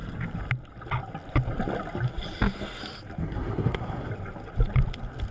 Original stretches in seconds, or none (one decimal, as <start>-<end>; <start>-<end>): 0.0-3.2; 4.1-5.3